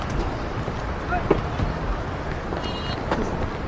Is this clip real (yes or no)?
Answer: yes